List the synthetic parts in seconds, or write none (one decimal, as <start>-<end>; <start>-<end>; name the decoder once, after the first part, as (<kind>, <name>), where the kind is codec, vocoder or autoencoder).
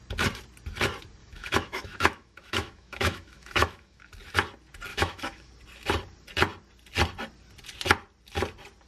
1.2-4.1 (autoencoder, DAC-VAE); 4.9-5.5